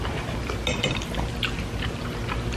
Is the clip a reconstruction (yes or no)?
no